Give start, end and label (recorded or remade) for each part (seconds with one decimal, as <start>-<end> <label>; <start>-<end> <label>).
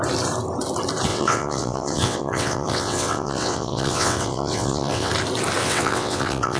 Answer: 0.0-1.1 recorded; 1.1-5.1 remade; 5.1-5.6 recorded; 5.6-6.6 remade